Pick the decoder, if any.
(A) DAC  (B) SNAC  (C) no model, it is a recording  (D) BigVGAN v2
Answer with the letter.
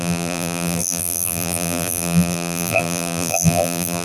D